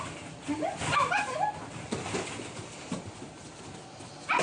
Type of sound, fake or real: real